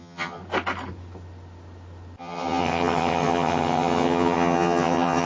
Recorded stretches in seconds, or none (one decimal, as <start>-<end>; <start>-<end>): 0.4-2.2

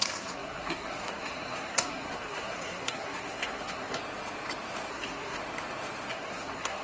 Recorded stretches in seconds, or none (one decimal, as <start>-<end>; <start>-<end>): 4.0-4.9; 5.4-6.1